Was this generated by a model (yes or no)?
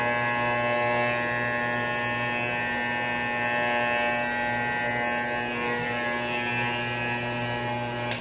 no